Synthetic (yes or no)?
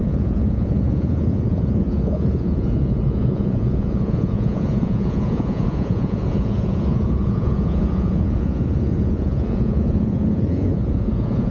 yes